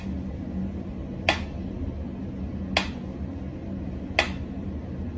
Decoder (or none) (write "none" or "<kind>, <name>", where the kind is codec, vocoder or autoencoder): none